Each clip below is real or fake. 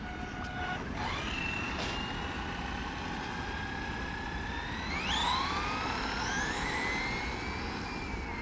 real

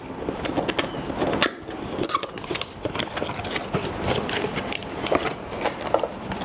real